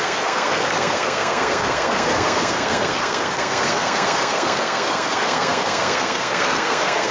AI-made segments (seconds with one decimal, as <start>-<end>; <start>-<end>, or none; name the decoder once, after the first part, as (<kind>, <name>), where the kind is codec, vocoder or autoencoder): 0.0-7.1 (codec, SNAC)